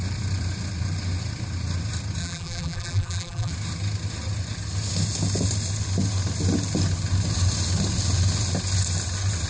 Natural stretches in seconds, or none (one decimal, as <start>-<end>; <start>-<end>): 0.0-2.2; 3.5-9.5